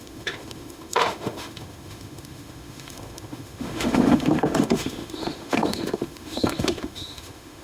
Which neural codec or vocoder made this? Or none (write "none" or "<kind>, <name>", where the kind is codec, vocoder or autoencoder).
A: autoencoder, DAC-VAE